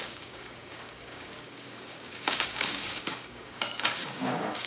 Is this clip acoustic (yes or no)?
no